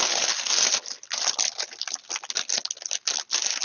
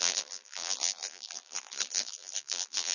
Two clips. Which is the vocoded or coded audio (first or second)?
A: second